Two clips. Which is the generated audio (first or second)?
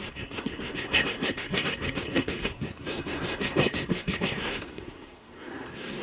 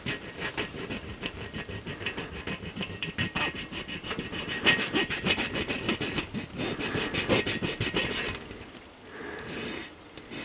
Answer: first